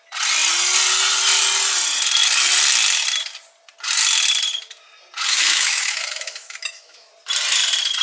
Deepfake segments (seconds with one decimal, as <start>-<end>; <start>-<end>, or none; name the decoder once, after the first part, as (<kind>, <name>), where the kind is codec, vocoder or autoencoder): 5.3-7.1 (autoencoder, DAC-VAE)